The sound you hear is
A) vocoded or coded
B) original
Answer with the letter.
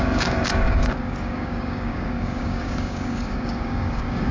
A